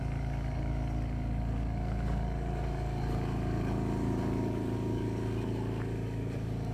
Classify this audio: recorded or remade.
remade